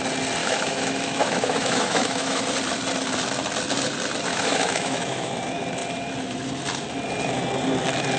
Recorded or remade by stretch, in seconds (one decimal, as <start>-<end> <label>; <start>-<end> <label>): 0.0-0.4 recorded; 0.4-2.4 remade; 2.4-4.3 recorded; 4.3-5.3 remade; 5.3-8.2 recorded